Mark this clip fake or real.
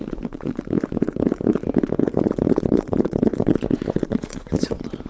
fake